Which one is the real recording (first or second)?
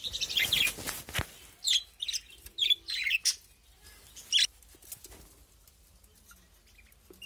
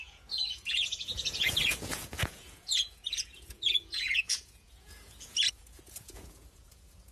first